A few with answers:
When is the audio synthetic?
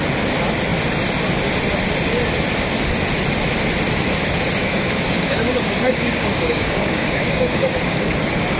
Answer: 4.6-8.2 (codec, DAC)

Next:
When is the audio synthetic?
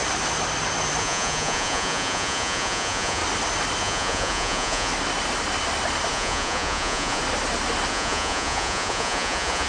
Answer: 1.0-3.2 (vocoder, Vocos); 3.8-4.9; 6.1-7.2; 7.9-9.7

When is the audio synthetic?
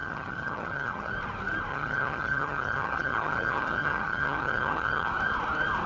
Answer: 0.0-1.1 (vocoder, HiFi-GAN); 1.7-5.1